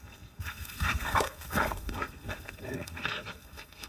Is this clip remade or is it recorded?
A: remade